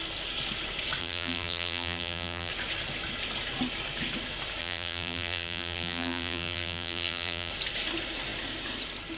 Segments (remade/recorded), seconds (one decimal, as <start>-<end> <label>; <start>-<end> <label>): 0.0-1.0 recorded; 1.0-2.5 remade; 2.5-4.6 recorded; 4.6-7.5 remade; 7.5-9.2 recorded

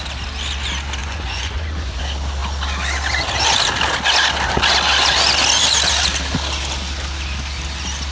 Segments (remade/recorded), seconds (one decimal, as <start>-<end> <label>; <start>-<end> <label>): 0.0-1.0 recorded; 1.0-2.0 remade; 2.0-8.1 recorded

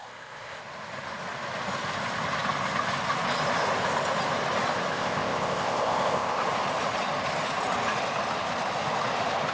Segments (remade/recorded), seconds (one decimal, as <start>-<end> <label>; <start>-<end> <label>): 0.0-0.6 remade; 0.6-4.9 recorded; 4.9-6.4 remade; 6.4-9.5 recorded

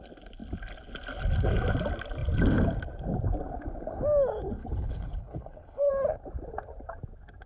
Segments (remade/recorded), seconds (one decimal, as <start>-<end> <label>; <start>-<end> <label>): 0.0-4.6 recorded; 4.6-5.9 remade; 5.9-7.5 recorded